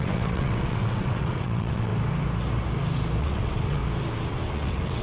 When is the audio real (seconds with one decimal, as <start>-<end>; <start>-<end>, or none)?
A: 1.9-3.2; 3.8-4.3

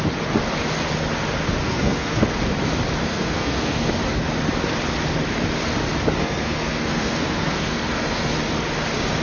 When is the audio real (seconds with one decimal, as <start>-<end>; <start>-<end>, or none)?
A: 0.0-1.6; 2.3-3.0; 3.9-6.2; 8.3-9.2

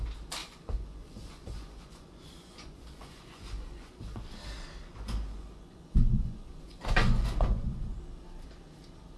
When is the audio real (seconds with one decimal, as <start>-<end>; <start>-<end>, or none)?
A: 0.0-0.4; 4.3-4.8; 8.0-9.2

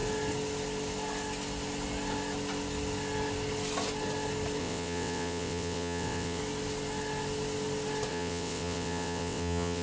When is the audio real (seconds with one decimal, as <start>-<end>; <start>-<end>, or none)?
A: 0.0-4.6; 6.4-8.1

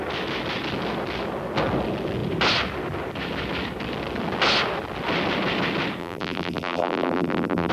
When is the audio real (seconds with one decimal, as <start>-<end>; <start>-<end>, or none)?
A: 0.0-6.0